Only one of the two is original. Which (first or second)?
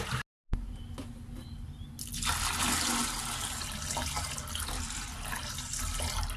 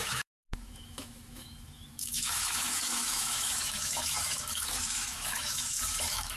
first